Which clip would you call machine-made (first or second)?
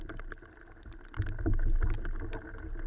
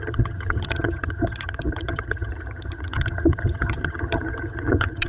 second